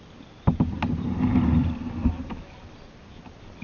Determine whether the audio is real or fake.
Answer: real